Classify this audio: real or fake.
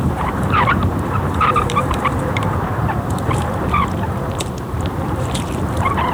fake